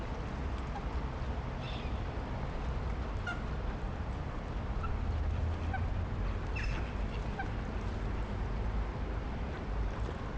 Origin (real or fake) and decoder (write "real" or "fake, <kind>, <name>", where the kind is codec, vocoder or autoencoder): real